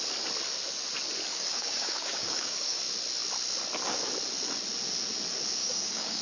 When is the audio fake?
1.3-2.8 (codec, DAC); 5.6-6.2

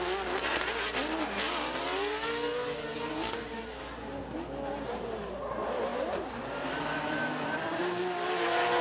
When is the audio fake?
none